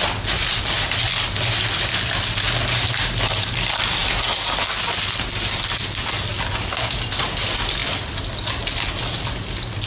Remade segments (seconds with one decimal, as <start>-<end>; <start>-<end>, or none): none